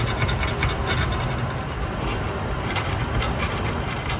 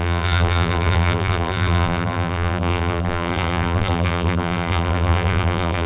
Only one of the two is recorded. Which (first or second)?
first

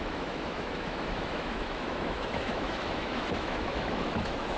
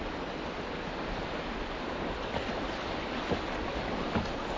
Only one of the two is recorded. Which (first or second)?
second